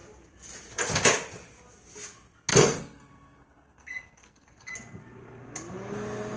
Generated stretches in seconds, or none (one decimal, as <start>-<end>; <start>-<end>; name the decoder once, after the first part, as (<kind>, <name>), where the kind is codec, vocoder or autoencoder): 2.5-4.7 (codec, SNAC)